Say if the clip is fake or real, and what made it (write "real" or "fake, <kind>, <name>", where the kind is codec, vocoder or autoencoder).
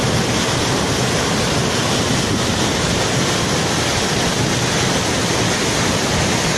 real